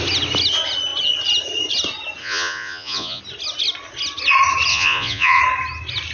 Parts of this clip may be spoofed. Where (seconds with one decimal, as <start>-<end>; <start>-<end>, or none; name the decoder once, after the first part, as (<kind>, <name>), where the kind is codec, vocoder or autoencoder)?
2.2-3.2 (vocoder, Vocos); 4.7-5.4